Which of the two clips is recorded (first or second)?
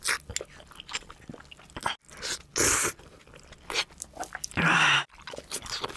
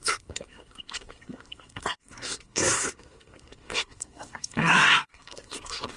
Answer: first